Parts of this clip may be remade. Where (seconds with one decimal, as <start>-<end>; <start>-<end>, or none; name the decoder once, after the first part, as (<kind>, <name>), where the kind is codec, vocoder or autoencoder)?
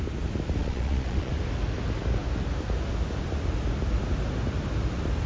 0.6-1.3 (vocoder, Vocos)